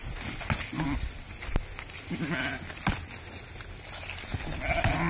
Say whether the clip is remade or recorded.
recorded